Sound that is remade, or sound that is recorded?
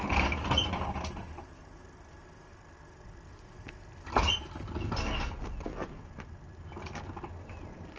recorded